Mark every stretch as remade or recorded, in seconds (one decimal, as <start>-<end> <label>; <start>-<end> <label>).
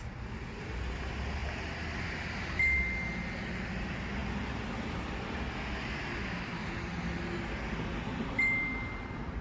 0.0-1.4 recorded; 1.4-2.0 remade; 2.0-9.4 recorded